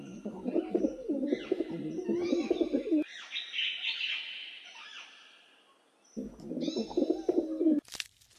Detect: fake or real real